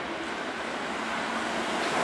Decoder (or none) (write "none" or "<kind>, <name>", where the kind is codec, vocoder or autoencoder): none